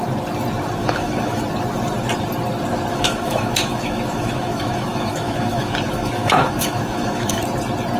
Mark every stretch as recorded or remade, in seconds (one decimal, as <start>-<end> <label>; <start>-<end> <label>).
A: 0.0-0.8 recorded; 0.8-1.4 remade; 1.4-2.9 recorded; 2.9-7.4 remade; 7.4-8.0 recorded